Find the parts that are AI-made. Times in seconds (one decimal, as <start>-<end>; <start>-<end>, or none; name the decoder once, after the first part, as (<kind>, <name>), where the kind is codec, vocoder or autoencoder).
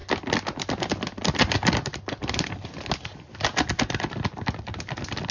none